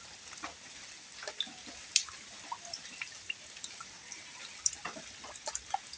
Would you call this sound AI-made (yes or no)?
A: no